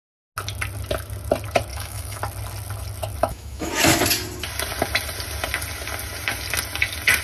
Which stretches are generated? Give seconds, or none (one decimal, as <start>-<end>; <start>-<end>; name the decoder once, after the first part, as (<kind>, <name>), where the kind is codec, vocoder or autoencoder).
1.7-2.2 (autoencoder, DAC-VAE); 3.2-3.7